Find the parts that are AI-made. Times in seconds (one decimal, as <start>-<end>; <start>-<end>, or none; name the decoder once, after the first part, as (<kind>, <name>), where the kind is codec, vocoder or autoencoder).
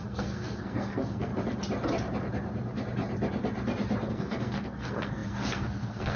0.0-1.3 (codec, SNAC); 4.1-6.2